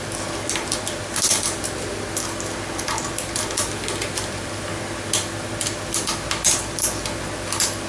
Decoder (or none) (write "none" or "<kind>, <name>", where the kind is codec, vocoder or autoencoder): none